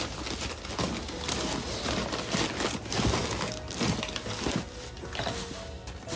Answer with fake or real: real